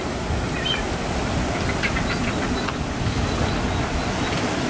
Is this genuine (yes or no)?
yes